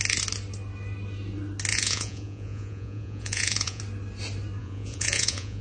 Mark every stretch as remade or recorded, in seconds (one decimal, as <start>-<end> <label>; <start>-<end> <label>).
0.0-1.7 recorded; 1.7-3.8 remade; 3.8-4.6 recorded; 4.6-5.6 remade